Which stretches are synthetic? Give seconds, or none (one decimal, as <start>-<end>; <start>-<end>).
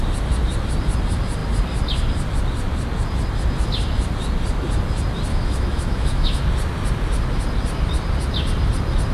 5.3-6.4